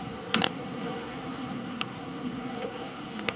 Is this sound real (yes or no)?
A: no